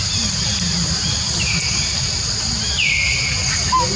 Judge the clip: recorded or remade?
recorded